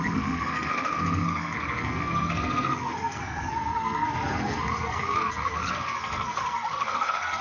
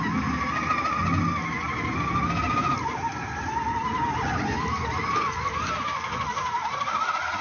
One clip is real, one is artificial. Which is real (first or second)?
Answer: second